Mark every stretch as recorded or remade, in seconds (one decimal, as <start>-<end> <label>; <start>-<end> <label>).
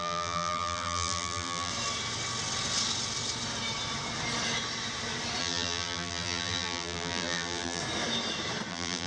0.0-1.7 remade; 1.7-5.4 recorded; 5.4-7.8 remade; 7.8-8.7 recorded; 8.7-9.1 remade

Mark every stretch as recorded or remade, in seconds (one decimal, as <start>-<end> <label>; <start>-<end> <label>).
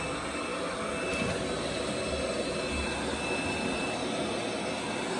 0.0-5.2 recorded